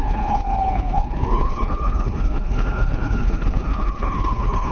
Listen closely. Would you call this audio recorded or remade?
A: remade